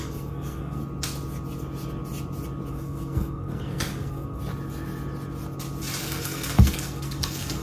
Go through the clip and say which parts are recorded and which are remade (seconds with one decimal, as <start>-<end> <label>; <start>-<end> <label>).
0.0-0.8 remade; 0.8-2.7 recorded; 2.7-4.4 remade; 4.4-6.0 recorded; 6.0-7.6 remade